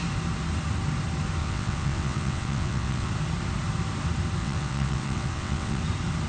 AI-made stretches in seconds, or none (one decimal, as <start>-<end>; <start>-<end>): 1.4-3.1; 4.4-5.8